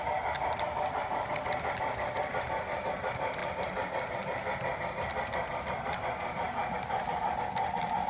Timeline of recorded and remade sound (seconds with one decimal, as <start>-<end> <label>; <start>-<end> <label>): 0.0-8.1 recorded